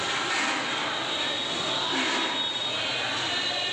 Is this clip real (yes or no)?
yes